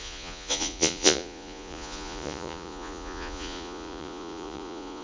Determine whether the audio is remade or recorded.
remade